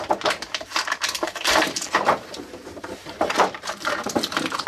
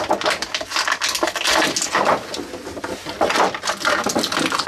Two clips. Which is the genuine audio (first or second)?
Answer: second